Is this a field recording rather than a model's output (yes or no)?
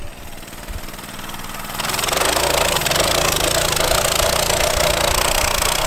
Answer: yes